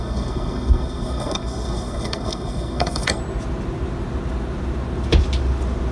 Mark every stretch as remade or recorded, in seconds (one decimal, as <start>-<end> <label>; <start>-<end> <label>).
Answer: 0.0-3.2 remade; 3.2-5.9 recorded